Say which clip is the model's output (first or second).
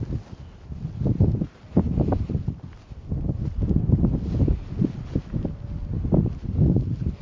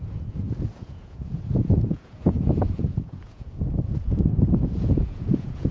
second